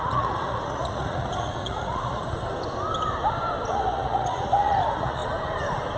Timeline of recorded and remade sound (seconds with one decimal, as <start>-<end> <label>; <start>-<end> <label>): 0.0-2.2 remade; 2.2-3.7 recorded; 3.7-5.2 remade; 5.2-6.0 recorded